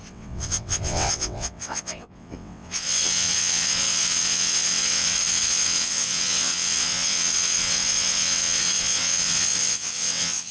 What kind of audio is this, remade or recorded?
remade